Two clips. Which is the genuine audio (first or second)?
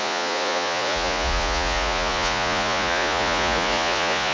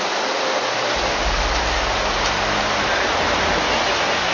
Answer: second